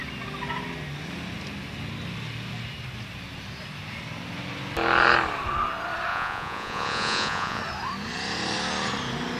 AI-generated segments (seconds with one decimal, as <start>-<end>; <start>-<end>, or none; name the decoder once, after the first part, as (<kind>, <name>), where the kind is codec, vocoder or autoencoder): 6.1-7.6 (vocoder, Vocos)